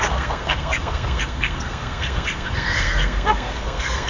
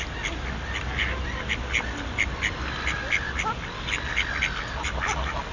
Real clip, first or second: second